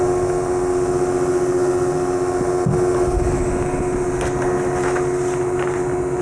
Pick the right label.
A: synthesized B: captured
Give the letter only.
B